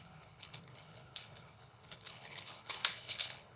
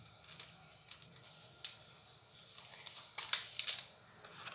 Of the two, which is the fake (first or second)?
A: first